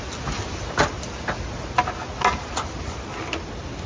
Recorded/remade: recorded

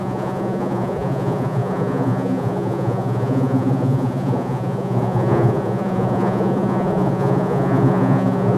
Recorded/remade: remade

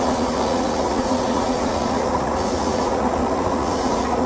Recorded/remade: remade